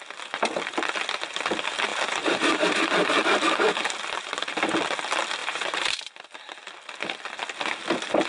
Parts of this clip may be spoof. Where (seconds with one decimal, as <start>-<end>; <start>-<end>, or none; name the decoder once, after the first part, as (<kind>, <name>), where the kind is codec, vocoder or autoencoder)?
1.9-2.8 (vocoder, BigVGAN v2); 5.4-6.1